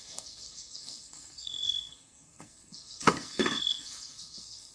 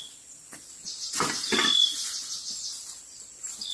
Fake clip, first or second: first